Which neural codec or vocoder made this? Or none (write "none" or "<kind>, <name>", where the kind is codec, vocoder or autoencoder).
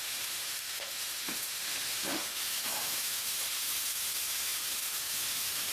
autoencoder, DAC-VAE